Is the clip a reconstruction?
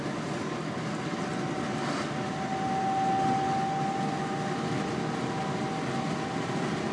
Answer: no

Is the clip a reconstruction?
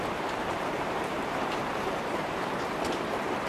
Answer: yes